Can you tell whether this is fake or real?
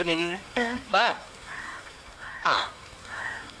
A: fake